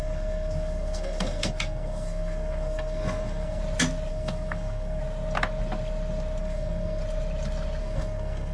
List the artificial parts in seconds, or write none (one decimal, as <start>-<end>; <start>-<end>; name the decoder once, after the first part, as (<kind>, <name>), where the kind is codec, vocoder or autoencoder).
0.0-3.6 (codec, SNAC); 4.1-5.0; 6.4-7.0; 7.8-8.5